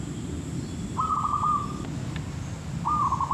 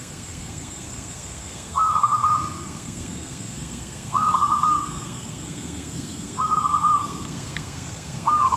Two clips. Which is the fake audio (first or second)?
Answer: second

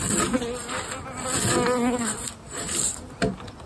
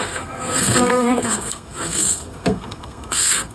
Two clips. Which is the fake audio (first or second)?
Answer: second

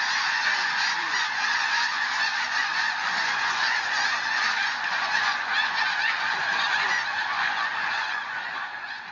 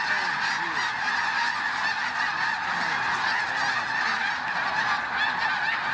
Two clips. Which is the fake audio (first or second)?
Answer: first